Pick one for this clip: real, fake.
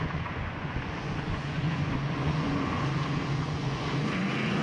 fake